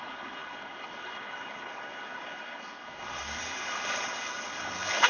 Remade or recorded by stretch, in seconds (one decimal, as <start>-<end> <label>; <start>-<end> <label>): 0.0-5.1 remade